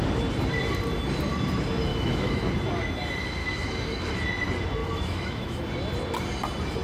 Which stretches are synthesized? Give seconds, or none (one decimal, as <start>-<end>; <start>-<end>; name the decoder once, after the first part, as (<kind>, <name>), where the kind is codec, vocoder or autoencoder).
1.9-2.5 (autoencoder, DAC-VAE); 3.4-4.1; 4.8-5.6